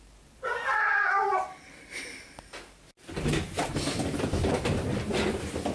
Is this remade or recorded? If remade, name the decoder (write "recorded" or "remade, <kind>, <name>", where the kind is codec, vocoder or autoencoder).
recorded